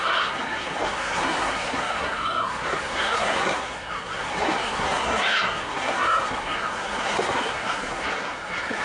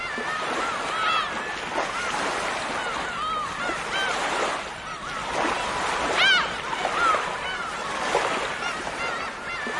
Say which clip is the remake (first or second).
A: first